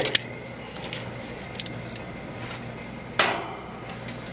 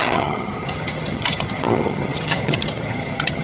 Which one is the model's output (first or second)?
second